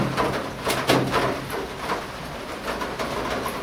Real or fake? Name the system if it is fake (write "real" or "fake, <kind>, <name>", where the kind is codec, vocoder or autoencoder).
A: real